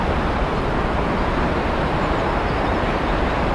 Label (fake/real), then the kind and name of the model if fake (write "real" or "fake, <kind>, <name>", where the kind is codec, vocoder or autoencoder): real